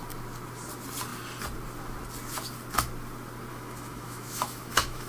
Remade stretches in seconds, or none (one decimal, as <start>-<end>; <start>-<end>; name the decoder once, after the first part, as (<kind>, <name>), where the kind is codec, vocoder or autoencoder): 3.5-5.1 (autoencoder, DAC-VAE)